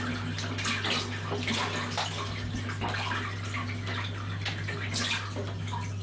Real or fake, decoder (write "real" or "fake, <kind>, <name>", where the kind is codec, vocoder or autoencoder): real